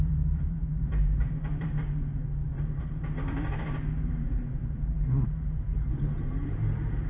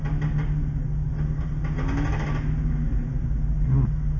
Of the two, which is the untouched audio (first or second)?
second